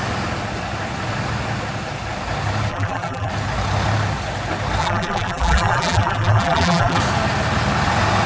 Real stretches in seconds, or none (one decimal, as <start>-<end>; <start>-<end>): 0.0-2.7; 3.3-4.8; 7.0-8.3